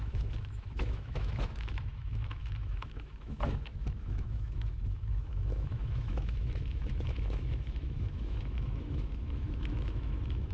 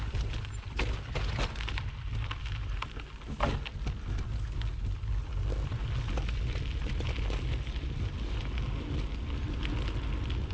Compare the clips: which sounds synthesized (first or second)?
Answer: first